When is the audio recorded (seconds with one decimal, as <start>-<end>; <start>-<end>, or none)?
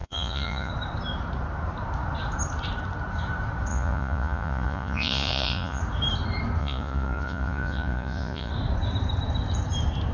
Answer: 0.7-3.7; 5.8-6.6; 8.5-10.1